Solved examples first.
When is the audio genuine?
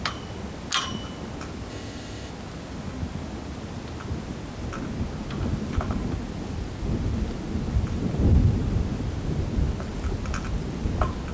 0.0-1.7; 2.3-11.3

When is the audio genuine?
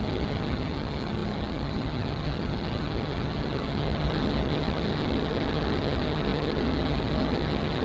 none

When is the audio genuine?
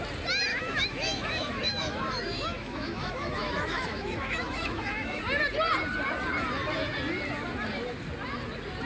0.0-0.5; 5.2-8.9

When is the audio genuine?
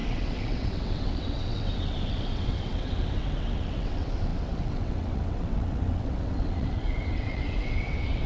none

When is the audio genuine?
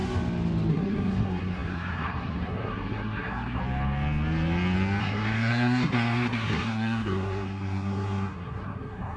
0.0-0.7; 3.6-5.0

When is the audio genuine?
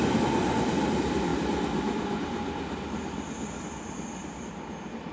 0.0-5.1